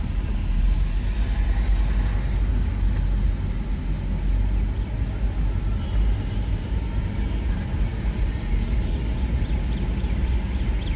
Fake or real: real